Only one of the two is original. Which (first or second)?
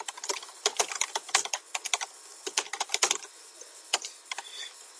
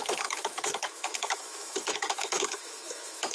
first